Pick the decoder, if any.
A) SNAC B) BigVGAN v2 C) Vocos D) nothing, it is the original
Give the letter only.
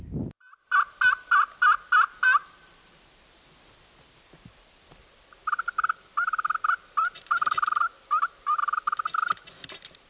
D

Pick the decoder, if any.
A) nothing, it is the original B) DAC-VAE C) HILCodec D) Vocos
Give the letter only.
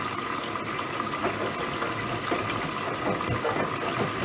A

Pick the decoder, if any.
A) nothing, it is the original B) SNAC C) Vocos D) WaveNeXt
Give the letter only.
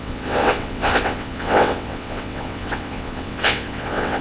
D